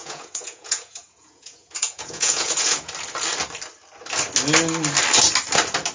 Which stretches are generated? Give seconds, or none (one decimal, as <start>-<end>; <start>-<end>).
0.0-2.9